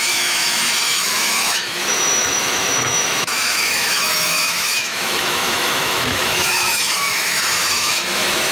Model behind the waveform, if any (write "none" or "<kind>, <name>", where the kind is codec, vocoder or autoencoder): autoencoder, DAC-VAE